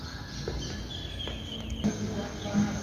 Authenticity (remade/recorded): recorded